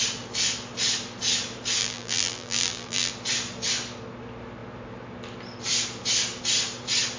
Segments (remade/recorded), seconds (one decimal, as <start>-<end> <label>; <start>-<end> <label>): 0.0-1.8 recorded; 1.8-3.1 remade; 3.1-7.2 recorded